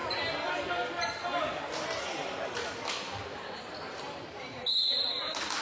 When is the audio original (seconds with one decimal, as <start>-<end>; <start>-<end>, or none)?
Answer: 0.0-5.6